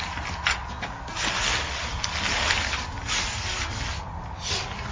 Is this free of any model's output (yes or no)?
yes